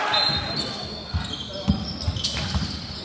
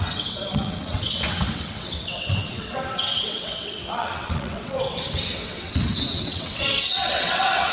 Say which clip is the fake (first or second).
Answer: second